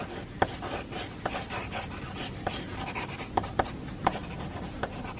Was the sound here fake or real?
real